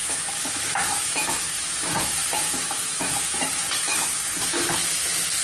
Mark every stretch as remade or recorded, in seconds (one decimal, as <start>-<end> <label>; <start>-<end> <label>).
0.0-5.4 remade